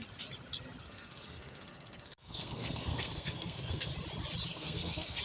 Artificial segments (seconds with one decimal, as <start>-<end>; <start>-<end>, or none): 0.8-3.9; 4.5-5.2